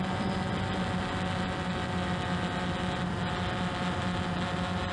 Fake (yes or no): no